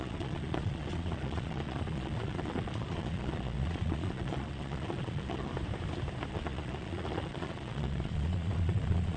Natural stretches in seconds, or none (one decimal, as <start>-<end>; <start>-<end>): 5.5-6.3